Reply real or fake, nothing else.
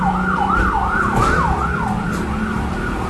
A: real